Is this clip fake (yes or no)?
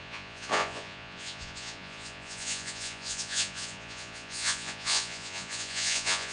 yes